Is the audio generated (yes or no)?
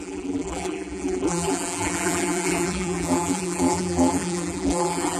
yes